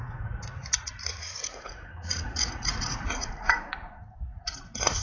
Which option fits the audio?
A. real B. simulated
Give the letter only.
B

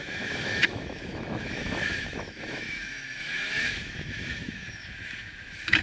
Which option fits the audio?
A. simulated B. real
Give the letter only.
A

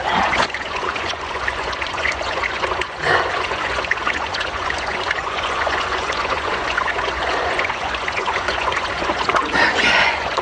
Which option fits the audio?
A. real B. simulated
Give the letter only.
B